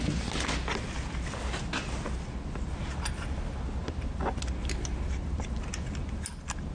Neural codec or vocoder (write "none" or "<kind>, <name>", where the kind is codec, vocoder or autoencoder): none